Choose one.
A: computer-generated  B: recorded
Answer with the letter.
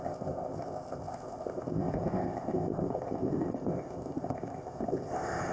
A